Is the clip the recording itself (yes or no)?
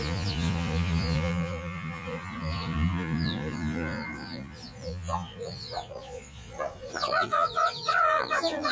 no